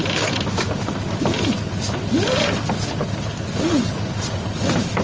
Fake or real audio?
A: real